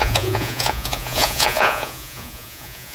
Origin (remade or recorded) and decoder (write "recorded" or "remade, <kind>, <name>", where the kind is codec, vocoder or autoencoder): remade, vocoder, Vocos